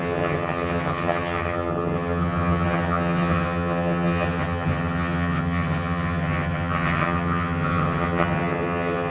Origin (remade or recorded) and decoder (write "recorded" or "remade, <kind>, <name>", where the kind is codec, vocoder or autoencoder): remade, vocoder, HiFi-GAN